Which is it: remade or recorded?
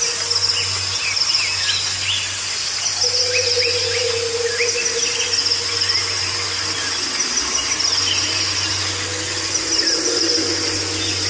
recorded